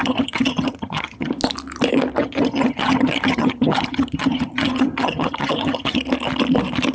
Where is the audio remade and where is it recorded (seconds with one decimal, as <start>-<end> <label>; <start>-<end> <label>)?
0.0-1.3 remade; 1.3-2.2 recorded; 2.2-6.0 remade; 6.0-6.9 recorded